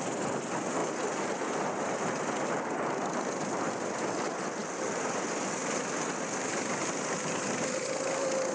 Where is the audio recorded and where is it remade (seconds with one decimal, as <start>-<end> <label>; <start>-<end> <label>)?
0.0-8.5 recorded